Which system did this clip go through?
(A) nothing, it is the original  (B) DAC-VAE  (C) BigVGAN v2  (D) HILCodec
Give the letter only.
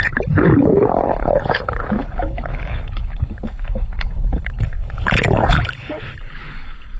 D